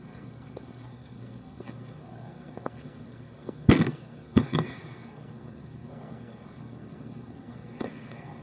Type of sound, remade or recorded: remade